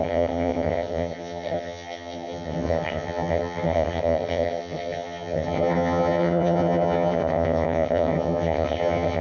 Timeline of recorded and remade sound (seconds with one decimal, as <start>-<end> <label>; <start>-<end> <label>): 0.0-9.2 remade

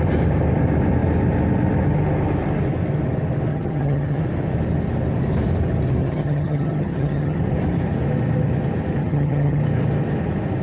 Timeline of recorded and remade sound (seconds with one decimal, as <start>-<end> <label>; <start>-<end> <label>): 0.0-3.5 recorded; 3.5-4.2 remade; 4.2-6.0 recorded; 6.0-7.4 remade; 7.4-9.0 recorded; 9.0-9.6 remade; 9.6-10.6 recorded

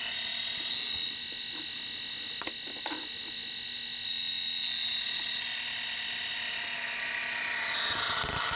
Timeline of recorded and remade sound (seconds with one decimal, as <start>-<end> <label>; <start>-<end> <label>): 0.0-8.6 recorded

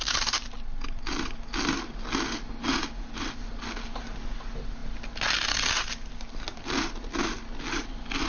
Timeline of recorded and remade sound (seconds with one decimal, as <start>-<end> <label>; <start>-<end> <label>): 0.0-8.3 recorded

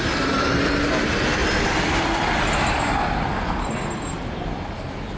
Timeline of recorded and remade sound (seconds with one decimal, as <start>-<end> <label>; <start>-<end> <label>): 0.0-5.2 recorded

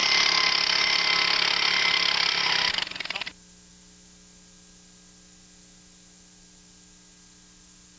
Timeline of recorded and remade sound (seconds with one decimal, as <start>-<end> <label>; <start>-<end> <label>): 0.0-8.0 recorded